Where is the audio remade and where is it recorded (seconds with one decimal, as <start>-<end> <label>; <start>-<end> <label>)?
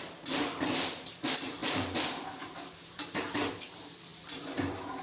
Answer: 0.0-5.0 remade